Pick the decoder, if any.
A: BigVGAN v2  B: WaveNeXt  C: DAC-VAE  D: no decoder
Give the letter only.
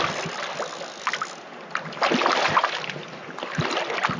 D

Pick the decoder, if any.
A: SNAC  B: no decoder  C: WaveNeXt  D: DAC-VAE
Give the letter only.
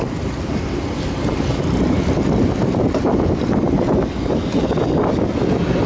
B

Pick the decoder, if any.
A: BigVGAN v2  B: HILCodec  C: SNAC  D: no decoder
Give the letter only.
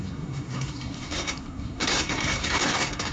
C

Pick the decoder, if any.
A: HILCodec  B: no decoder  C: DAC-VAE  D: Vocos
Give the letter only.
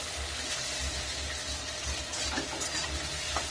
B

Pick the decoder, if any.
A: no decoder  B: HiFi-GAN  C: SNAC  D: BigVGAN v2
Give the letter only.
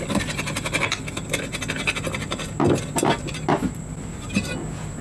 A